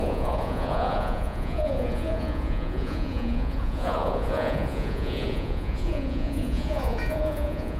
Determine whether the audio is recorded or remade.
remade